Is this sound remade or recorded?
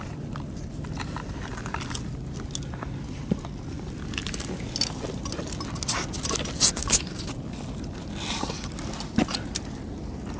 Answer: recorded